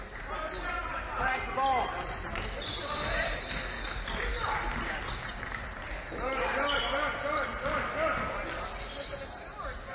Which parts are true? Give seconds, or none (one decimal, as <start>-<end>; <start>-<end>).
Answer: 0.0-0.9; 1.4-4.3; 6.8-9.9